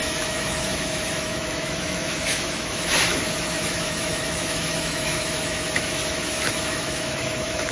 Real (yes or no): no